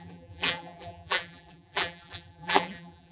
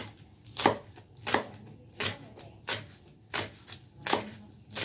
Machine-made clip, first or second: first